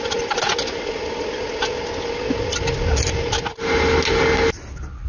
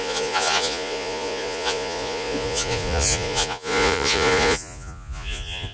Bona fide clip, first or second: first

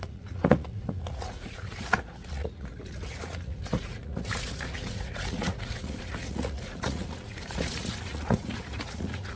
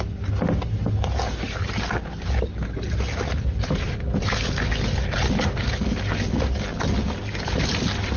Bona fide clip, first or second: second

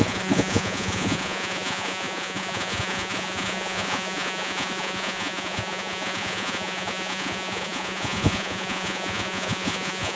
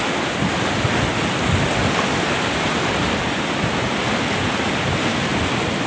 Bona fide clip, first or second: second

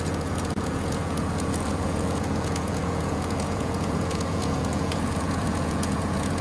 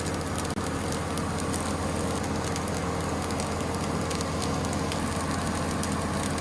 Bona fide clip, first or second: second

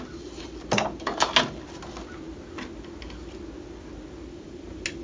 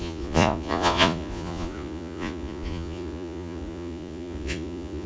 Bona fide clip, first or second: first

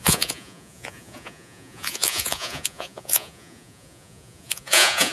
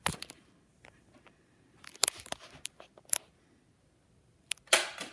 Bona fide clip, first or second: second